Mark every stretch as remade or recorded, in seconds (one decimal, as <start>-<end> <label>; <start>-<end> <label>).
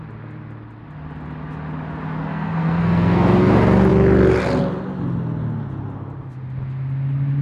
0.0-2.2 recorded; 2.2-3.5 remade; 3.5-7.4 recorded